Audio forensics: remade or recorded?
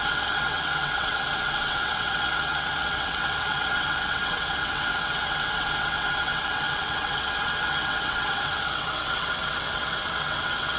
remade